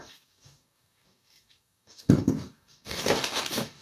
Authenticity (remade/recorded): remade